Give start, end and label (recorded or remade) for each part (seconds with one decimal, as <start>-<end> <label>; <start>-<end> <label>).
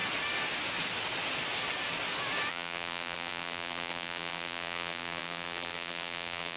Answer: 0.0-2.5 recorded; 2.5-6.6 remade